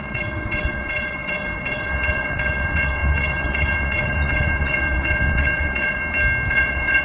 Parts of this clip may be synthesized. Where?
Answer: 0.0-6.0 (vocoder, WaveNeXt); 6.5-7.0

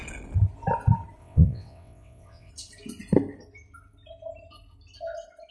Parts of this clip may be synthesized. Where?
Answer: 1.2-2.5 (vocoder, WaveNeXt)

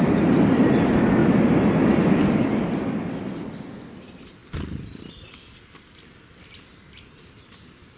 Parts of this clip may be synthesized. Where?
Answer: none

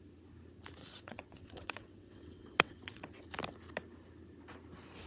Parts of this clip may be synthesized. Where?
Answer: 0.8-3.2 (vocoder, WaveNeXt)

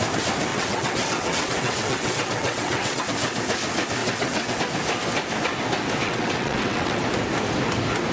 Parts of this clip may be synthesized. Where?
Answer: 0.5-3.0 (vocoder, WaveNeXt); 4.0-4.6; 6.0-7.0

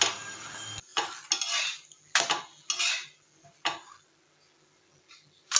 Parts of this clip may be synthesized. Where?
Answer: none

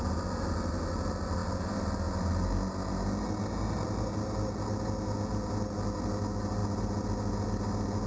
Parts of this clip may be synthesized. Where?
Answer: none